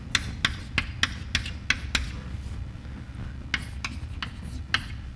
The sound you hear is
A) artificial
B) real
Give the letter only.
B